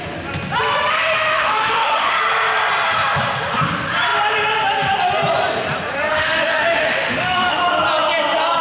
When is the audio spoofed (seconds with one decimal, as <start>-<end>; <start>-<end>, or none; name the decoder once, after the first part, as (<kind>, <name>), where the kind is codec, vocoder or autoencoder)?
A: 1.3-2.1 (autoencoder, DAC-VAE); 6.1-7.7